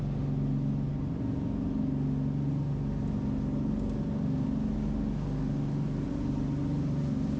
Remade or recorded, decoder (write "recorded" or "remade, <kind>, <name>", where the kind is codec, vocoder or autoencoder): recorded